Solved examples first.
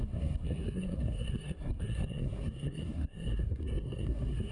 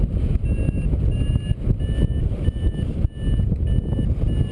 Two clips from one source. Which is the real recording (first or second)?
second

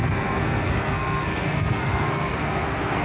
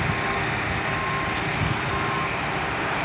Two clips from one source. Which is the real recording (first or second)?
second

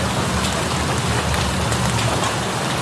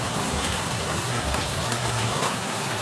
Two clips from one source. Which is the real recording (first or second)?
first